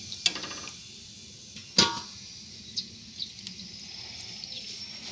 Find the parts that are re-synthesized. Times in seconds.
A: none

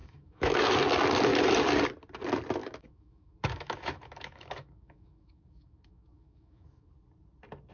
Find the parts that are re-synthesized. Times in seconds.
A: 0.0-0.6 (autoencoder, DAC-VAE); 2.6-6.9

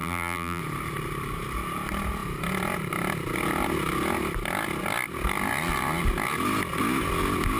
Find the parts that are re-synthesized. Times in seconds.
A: 0.0-0.6 (vocoder, BigVGAN v2)

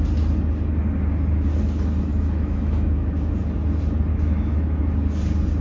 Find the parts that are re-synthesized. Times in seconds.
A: 2.1-3.3 (autoencoder, DAC-VAE); 4.1-4.8

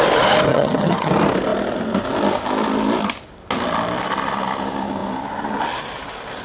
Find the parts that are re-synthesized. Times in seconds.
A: 0.5-1.1 (vocoder, HiFi-GAN)

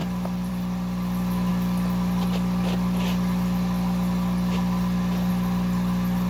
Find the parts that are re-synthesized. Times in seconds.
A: none

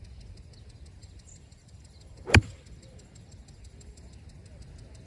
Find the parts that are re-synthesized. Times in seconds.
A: 1.0-4.1 (vocoder, BigVGAN v2)